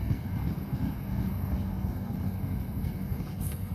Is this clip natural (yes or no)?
no